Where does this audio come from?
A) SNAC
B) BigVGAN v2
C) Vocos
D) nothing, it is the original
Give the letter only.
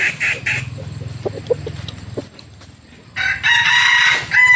D